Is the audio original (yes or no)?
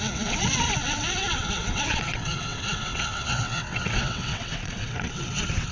no